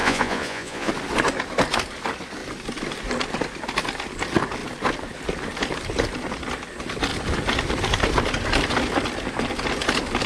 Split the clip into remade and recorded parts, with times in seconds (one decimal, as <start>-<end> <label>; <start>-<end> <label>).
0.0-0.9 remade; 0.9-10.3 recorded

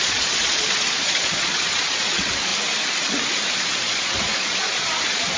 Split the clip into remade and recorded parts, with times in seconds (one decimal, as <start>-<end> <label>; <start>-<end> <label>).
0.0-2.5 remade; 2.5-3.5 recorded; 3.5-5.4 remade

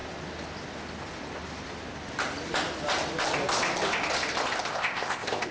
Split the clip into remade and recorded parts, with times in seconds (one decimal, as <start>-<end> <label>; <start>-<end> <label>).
0.0-4.7 recorded; 4.7-5.5 remade